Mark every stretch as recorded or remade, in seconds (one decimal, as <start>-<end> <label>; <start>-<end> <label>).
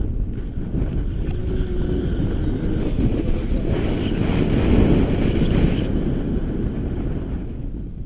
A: 0.0-8.1 recorded